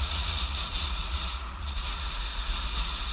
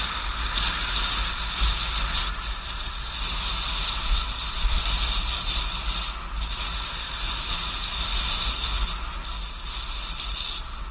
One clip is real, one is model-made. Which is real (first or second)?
second